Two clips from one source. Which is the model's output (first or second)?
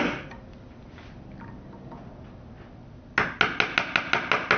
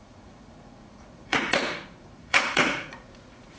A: second